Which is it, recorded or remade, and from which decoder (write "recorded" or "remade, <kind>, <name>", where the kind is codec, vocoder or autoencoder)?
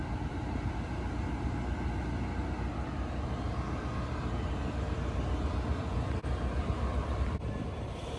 recorded